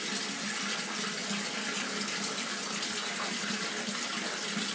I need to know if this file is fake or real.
real